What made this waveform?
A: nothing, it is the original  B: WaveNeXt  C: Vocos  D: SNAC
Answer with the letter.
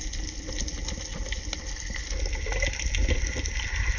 A